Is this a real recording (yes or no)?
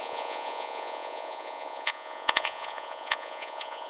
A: no